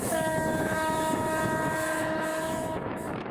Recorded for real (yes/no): no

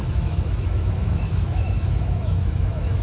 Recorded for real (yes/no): no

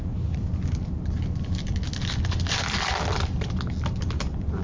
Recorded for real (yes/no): yes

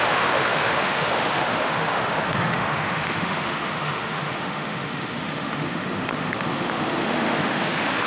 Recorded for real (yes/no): no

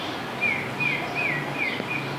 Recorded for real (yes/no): yes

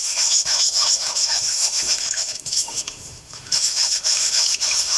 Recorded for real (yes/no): no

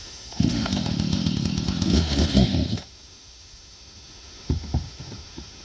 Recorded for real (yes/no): no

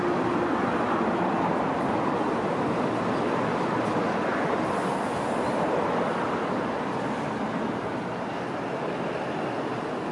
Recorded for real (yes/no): yes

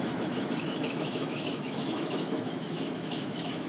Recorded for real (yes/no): no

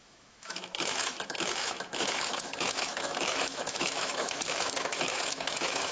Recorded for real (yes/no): no